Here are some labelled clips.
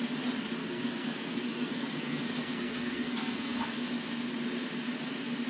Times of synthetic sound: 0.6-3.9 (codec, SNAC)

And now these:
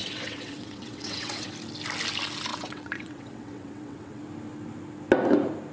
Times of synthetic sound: 0.0-1.5 (vocoder, WaveNeXt); 2.5-4.2

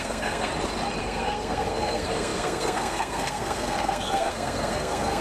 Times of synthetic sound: 0.0-0.5 (codec, SNAC); 1.0-5.2